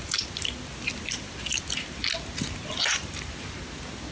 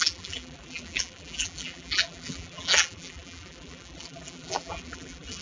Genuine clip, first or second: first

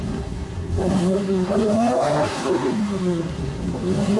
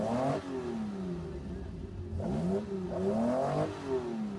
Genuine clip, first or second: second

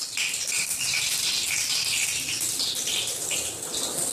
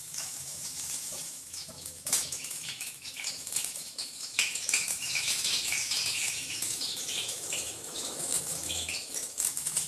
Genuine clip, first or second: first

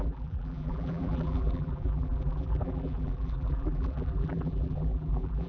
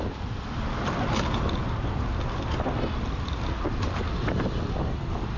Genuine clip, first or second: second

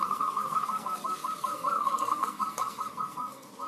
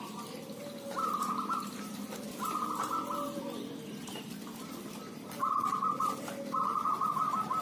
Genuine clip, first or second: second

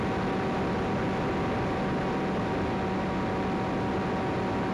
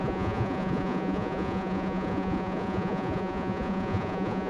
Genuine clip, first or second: first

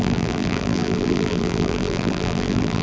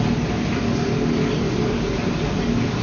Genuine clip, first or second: second